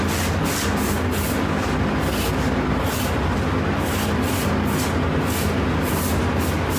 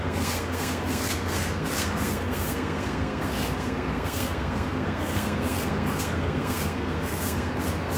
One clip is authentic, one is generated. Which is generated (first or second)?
second